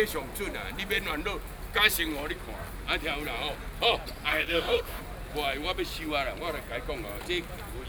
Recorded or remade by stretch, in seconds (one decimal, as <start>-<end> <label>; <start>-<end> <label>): 0.0-4.3 recorded; 4.3-5.0 remade; 5.0-7.9 recorded